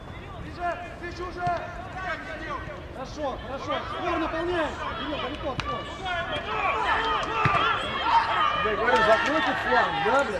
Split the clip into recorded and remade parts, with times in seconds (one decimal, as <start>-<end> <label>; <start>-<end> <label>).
0.0-3.1 recorded; 3.1-4.1 remade; 4.1-10.4 recorded